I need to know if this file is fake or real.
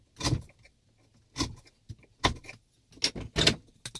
real